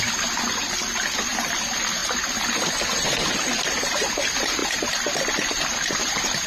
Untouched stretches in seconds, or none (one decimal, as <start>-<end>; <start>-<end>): 0.0-6.5

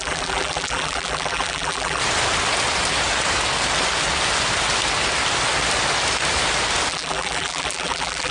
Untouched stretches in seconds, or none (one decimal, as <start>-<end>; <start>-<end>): 2.0-6.9

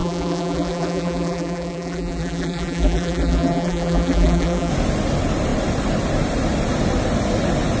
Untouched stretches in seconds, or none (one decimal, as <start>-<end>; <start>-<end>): 4.7-7.8

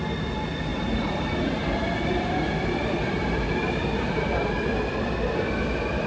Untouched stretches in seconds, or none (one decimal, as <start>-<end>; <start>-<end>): 0.0-0.7; 4.4-6.1

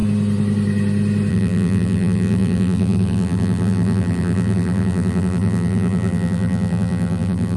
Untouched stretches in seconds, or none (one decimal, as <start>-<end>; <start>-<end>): 0.0-1.3